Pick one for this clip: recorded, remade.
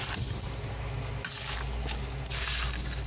recorded